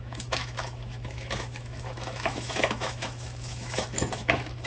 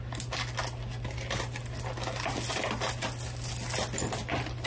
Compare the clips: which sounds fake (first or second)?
first